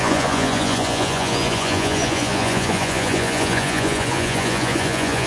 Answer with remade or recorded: remade